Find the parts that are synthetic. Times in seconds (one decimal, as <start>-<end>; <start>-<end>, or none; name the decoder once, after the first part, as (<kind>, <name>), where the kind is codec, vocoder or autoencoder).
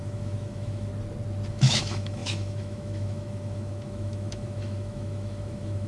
0.0-0.9 (autoencoder, DAC-VAE); 1.5-5.9